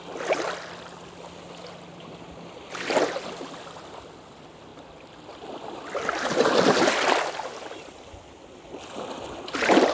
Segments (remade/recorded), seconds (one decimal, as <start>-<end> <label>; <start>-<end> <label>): 0.0-9.9 recorded